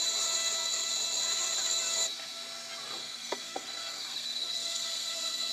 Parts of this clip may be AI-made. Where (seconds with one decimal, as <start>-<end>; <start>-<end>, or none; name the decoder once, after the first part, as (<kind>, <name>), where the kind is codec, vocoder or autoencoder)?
3.0-5.5 (codec, SNAC)